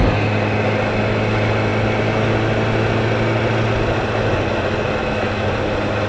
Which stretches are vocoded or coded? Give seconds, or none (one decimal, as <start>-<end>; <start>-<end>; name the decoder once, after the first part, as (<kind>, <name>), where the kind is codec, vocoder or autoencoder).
5.0-5.5 (autoencoder, DAC-VAE)